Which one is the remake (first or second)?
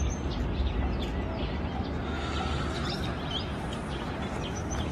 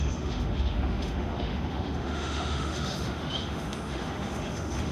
second